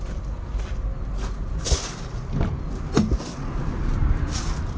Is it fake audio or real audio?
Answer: real